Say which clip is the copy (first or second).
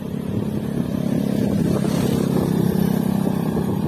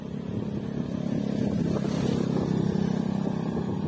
first